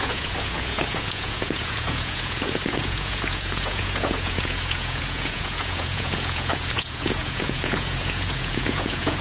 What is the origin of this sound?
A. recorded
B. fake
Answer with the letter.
B